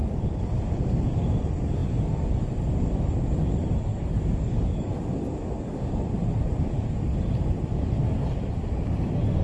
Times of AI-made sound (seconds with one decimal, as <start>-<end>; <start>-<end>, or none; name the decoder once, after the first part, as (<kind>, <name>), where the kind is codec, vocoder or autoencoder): 3.9-4.9 (codec, DAC)